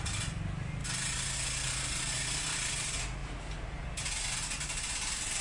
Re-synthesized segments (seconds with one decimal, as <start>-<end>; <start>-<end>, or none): none